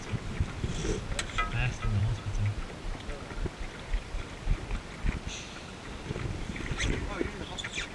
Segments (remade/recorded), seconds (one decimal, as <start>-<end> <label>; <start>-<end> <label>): 0.0-7.9 recorded